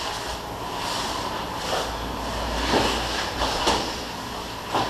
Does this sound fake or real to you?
real